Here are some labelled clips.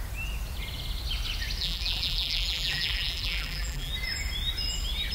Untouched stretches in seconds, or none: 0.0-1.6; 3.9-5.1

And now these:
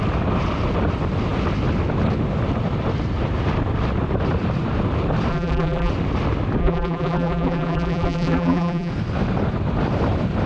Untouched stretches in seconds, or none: 0.0-5.3; 5.9-6.6; 8.9-10.5

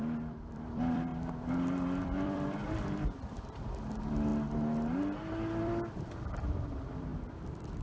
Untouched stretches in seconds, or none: 1.1-2.0; 4.3-5.6; 7.1-7.8

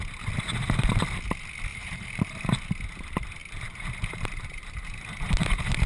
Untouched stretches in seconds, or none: 0.0-1.7; 2.6-3.4; 5.2-5.9

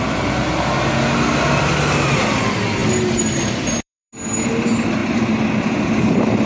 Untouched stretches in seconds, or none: 0.0-2.8; 4.1-6.5